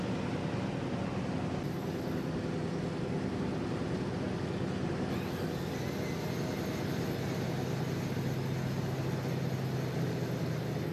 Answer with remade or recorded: recorded